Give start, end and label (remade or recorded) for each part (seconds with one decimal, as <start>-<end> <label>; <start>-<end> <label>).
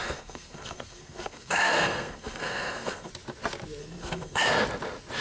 0.0-3.1 remade; 3.1-3.8 recorded; 3.8-4.4 remade; 4.4-5.2 recorded